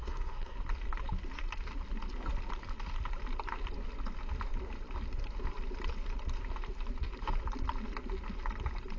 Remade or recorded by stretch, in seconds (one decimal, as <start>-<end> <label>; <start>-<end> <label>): 0.0-0.6 remade; 0.6-9.0 recorded